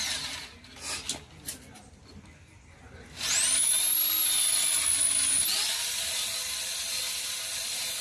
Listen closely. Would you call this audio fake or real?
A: real